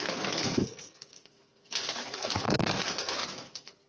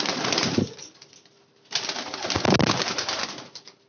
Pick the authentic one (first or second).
second